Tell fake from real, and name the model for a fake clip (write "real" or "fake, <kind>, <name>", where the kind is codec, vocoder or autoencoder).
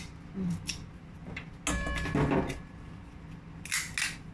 real